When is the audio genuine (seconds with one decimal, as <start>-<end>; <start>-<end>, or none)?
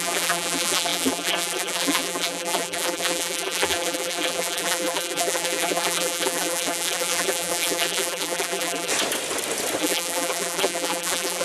8.9-9.8